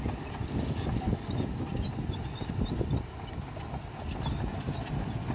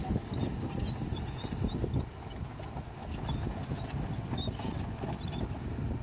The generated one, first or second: first